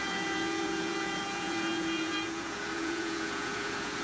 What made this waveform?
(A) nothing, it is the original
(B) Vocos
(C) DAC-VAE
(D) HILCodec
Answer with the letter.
B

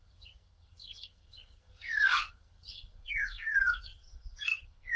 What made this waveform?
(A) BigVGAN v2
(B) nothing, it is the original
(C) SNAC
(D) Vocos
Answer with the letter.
C